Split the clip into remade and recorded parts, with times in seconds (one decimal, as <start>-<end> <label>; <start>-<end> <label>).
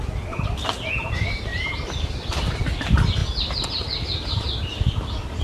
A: 0.0-1.5 recorded; 1.5-2.6 remade; 2.6-5.4 recorded